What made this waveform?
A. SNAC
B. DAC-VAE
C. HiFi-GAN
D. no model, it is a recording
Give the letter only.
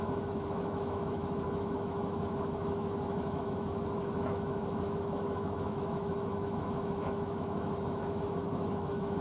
B